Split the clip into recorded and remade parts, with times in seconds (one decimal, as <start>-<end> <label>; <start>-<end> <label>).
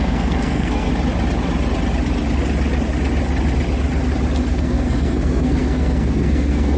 0.0-0.9 remade; 0.9-4.5 recorded; 4.5-6.8 remade